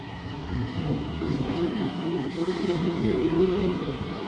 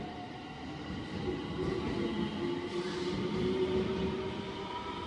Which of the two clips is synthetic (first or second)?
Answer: first